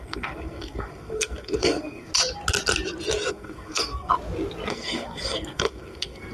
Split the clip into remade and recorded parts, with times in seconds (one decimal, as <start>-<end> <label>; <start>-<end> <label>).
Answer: 0.0-2.1 remade; 2.1-3.3 recorded; 3.3-4.1 remade; 4.1-4.7 recorded; 4.7-6.3 remade